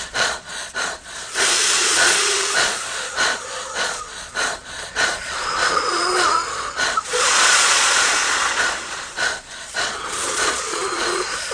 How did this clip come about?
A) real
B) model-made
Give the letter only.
B